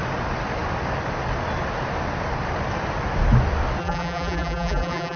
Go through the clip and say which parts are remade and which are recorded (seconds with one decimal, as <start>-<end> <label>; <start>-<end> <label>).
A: 0.0-3.8 recorded; 3.8-5.2 remade